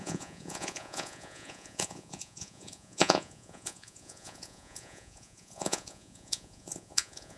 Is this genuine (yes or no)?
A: no